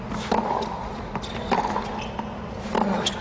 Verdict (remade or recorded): recorded